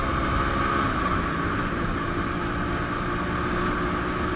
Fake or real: real